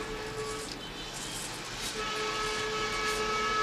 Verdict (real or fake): real